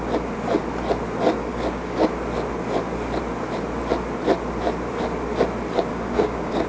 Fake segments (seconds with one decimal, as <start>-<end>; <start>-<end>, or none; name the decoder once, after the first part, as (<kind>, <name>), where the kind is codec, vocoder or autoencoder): 1.5-2.1 (codec, DAC); 5.9-6.7